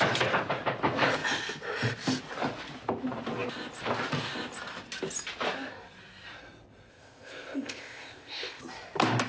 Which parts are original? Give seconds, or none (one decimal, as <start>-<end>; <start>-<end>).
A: 0.0-6.9; 8.6-9.3